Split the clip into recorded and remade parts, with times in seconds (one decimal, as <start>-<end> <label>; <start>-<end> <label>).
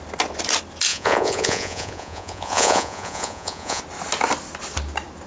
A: 0.0-0.9 recorded; 0.9-3.8 remade; 3.8-5.3 recorded